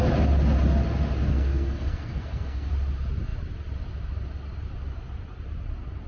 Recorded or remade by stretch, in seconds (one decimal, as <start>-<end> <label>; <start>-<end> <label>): 0.0-1.3 recorded; 1.3-2.7 remade; 2.7-6.1 recorded